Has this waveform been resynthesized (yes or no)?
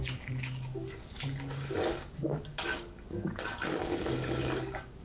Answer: yes